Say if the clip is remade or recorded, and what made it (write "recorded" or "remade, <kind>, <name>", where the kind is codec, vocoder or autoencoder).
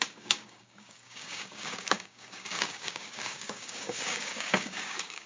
remade, codec, DAC